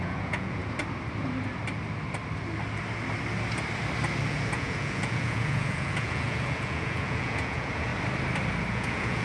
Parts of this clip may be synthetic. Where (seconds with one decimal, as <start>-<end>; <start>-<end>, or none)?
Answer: 0.0-0.6; 4.3-7.9; 8.7-9.2